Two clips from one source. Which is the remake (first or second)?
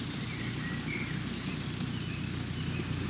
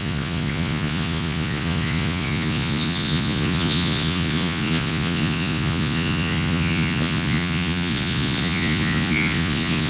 second